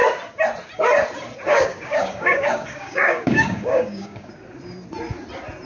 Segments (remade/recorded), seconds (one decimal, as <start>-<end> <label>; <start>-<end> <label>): 0.0-1.5 recorded; 1.5-4.3 remade; 4.3-5.7 recorded